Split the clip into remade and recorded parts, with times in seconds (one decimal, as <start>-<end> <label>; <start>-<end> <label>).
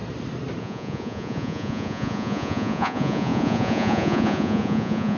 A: 0.0-0.6 recorded; 0.6-5.2 remade